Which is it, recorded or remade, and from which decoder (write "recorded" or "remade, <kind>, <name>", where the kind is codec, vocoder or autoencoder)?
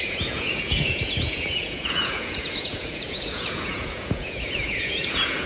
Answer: remade, vocoder, Vocos